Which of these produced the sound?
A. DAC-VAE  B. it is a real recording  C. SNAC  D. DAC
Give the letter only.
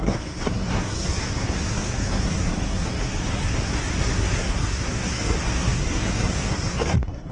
C